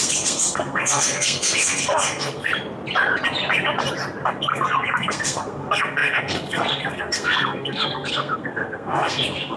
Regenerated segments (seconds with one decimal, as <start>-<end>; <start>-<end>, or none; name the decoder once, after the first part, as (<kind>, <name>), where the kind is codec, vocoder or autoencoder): 0.0-2.5 (codec, SNAC); 4.4-9.6